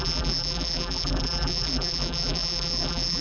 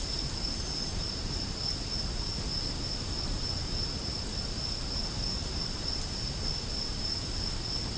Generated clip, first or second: first